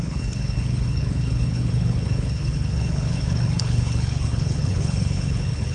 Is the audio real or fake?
fake